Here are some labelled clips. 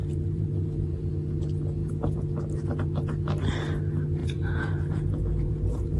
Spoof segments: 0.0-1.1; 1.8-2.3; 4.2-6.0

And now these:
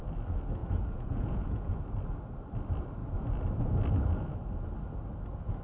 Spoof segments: 0.6-1.8

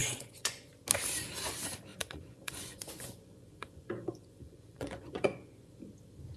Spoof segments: 0.0-0.7; 1.9-5.7

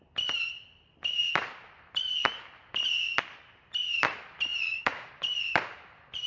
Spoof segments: 4.5-5.1

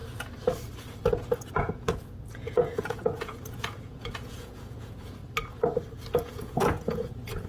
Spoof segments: 1.5-5.2; 6.2-7.5